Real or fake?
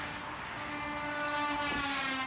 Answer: real